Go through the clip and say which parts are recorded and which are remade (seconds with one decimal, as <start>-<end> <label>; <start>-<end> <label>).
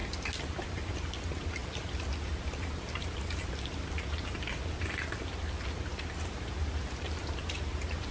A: 0.0-1.6 recorded; 1.6-3.6 remade; 3.6-8.1 recorded